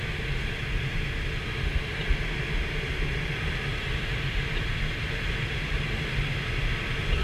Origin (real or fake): real